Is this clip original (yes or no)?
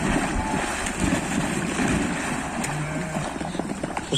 yes